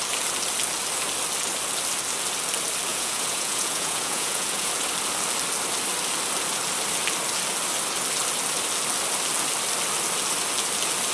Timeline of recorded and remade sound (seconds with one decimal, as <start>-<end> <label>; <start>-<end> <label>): 0.0-2.9 recorded; 2.9-4.7 remade; 4.7-11.1 recorded